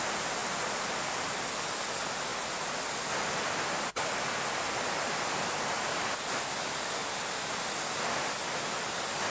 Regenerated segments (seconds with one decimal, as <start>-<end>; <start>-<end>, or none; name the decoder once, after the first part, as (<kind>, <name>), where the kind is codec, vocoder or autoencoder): none